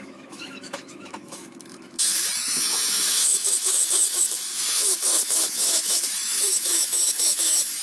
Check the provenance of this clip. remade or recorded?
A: remade